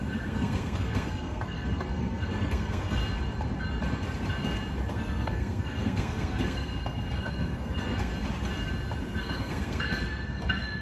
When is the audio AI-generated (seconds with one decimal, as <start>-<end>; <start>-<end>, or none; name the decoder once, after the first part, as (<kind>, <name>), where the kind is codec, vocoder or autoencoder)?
0.0-3.0 (codec, SNAC); 4.9-8.1; 9.2-10.8